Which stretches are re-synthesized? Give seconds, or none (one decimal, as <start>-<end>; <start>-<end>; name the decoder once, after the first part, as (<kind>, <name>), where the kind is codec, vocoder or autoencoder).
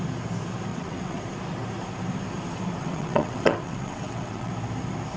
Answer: 0.7-1.2 (vocoder, WaveNeXt); 2.8-4.5